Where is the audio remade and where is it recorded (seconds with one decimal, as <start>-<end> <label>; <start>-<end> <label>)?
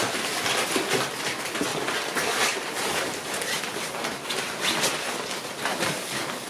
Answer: 0.0-5.7 recorded; 5.7-6.5 remade